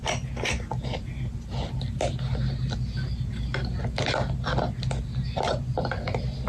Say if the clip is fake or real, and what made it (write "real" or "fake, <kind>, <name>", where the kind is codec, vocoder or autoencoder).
real